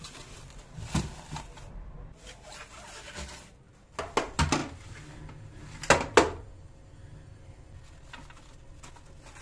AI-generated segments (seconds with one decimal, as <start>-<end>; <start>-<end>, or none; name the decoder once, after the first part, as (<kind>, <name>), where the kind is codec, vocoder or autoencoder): none